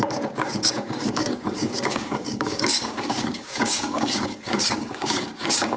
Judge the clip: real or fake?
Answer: fake